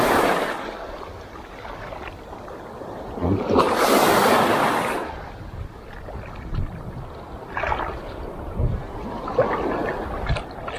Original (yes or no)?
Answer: yes